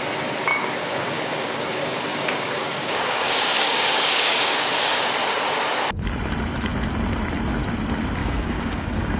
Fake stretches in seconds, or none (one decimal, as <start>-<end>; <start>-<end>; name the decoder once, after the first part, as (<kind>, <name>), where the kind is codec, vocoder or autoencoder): 0.5-5.1 (codec, DAC); 8.2-9.2